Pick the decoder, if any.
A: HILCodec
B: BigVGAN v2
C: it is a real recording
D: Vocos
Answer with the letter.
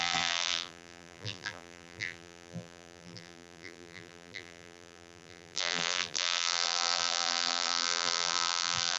B